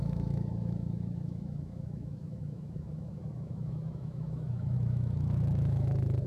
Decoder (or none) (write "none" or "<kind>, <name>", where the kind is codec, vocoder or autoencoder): autoencoder, DAC-VAE